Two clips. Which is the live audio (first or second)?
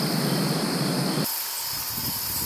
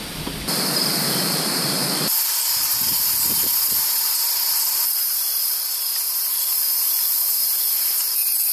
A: first